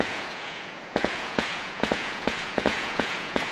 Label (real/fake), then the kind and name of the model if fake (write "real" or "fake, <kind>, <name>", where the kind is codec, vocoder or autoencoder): fake, vocoder, Vocos